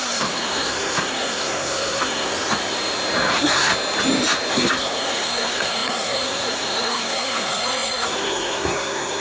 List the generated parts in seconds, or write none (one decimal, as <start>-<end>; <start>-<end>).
0.0-2.3; 3.3-3.7; 4.5-9.2